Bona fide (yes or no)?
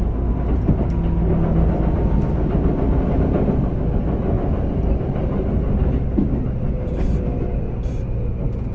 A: yes